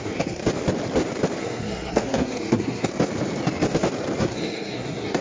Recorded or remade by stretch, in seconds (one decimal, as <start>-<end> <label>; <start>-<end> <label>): 0.0-0.4 remade; 0.4-1.4 recorded; 1.4-2.9 remade; 2.9-4.2 recorded; 4.2-5.2 remade